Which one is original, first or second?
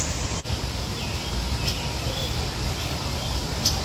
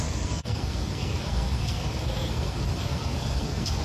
first